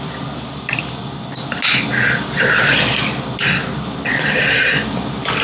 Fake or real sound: real